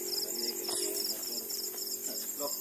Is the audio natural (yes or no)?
yes